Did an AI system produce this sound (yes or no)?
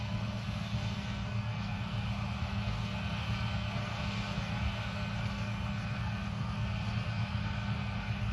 yes